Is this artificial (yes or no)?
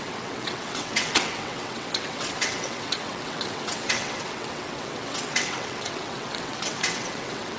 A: yes